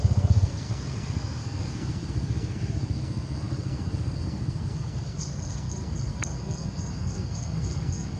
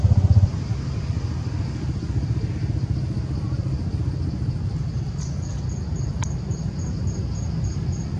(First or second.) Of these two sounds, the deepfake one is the first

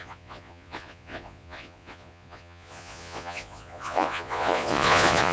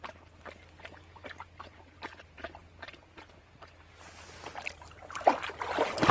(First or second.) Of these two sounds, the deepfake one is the first